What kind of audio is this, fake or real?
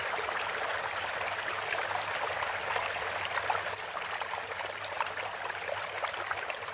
real